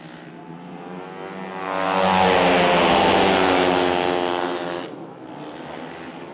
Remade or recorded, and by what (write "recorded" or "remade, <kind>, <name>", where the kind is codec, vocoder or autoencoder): recorded